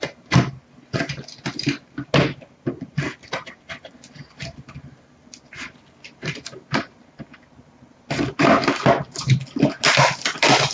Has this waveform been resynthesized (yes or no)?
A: no